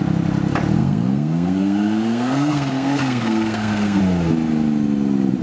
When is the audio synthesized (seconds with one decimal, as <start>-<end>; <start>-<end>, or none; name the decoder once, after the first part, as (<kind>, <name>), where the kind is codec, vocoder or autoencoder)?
0.8-4.0 (codec, SNAC)